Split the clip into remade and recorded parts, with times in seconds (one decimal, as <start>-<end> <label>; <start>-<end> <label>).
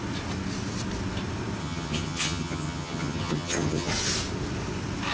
0.0-1.6 recorded; 1.6-3.9 remade; 3.9-5.1 recorded